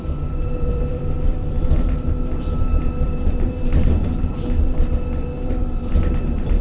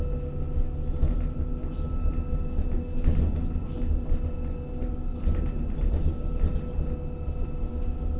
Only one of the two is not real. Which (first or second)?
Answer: first